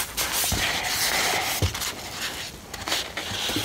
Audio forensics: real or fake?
real